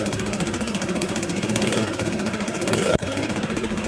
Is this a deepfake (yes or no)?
yes